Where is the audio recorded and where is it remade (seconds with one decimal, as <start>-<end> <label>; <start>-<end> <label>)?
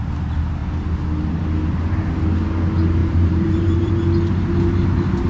0.0-3.0 recorded; 3.0-3.9 remade; 3.9-5.3 recorded